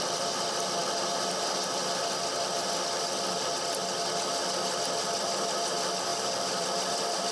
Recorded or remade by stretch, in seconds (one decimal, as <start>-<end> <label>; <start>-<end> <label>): 0.0-6.1 recorded; 6.1-7.3 remade